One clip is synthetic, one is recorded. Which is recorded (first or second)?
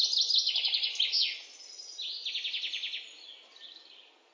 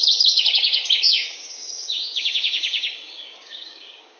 first